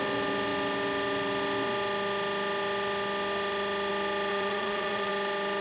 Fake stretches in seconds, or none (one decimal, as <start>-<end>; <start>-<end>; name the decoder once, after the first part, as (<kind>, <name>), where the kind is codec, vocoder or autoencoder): 4.3-5.1 (vocoder, Vocos)